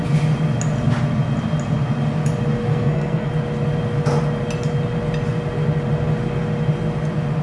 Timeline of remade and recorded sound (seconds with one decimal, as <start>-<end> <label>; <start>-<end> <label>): 0.0-2.7 recorded; 2.7-3.3 remade; 3.3-7.4 recorded